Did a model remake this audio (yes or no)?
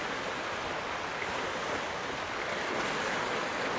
no